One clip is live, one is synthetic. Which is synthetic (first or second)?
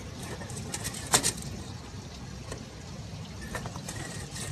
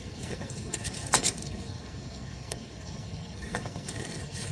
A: second